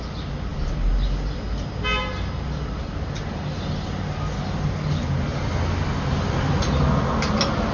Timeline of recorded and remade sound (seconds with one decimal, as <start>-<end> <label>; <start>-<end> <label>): 0.0-7.7 recorded